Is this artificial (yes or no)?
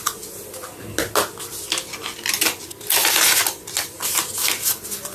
no